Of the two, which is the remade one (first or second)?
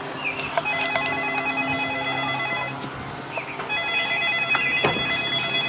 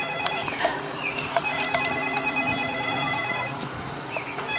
second